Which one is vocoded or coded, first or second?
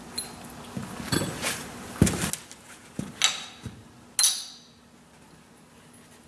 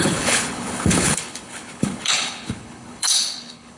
second